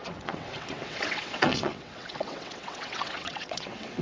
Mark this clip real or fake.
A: fake